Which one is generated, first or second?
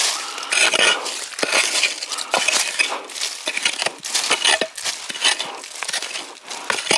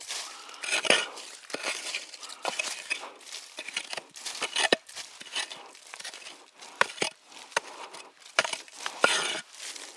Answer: second